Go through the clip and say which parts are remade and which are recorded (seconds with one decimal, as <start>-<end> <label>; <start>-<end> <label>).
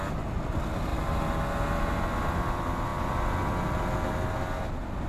0.0-5.1 recorded